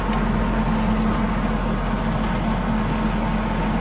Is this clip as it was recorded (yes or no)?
yes